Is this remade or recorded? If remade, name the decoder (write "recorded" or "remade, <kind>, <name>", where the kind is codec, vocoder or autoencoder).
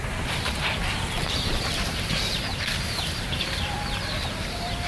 remade, vocoder, BigVGAN v2